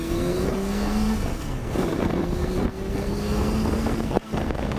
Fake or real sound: fake